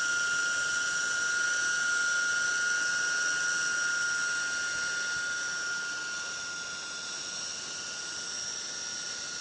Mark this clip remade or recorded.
recorded